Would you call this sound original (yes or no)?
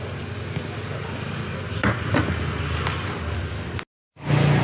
yes